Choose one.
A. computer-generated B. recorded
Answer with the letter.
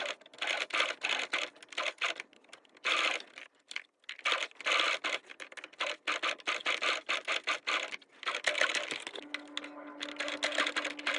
B